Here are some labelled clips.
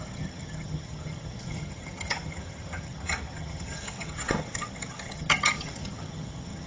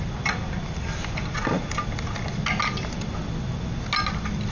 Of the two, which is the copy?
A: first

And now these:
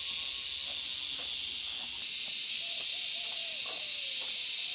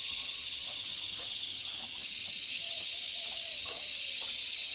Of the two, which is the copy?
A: second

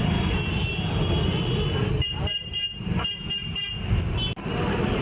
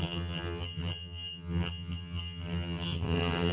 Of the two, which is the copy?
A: second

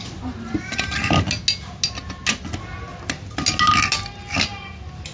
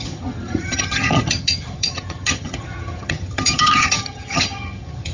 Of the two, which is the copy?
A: second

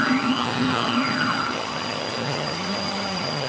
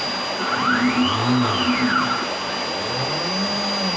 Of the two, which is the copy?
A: first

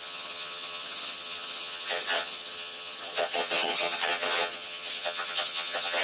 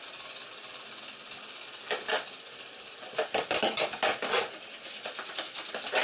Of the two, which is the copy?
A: first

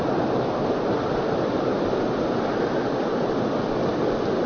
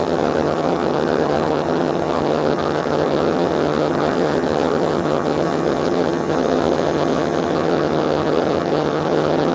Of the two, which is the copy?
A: second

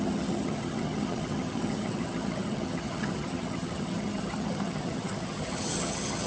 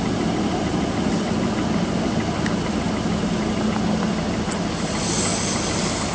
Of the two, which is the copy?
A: first